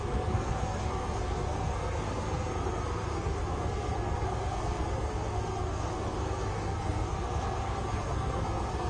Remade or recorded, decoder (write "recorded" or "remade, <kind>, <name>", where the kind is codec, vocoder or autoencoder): remade, codec, SNAC